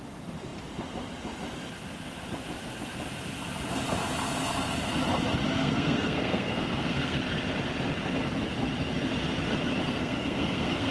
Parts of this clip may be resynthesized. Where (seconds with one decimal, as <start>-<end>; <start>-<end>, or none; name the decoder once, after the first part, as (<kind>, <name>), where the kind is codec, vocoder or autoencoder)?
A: 5.6-7.2 (codec, SNAC); 9.8-10.9